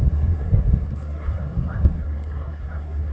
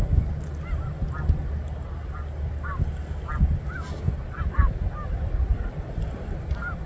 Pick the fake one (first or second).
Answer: first